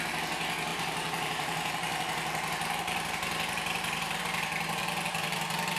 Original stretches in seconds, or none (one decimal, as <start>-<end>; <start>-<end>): 0.0-0.7; 4.2-4.8